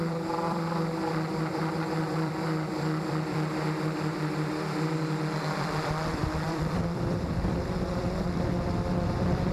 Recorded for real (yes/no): no